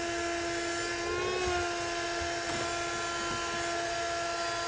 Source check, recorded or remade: recorded